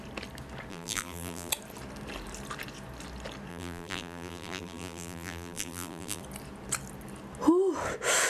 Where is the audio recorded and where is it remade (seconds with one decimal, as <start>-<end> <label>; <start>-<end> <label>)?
0.0-0.7 recorded; 0.7-1.5 remade; 1.5-3.5 recorded; 3.5-6.2 remade; 6.2-8.3 recorded